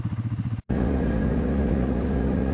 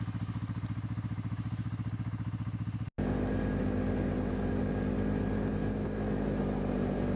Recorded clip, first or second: second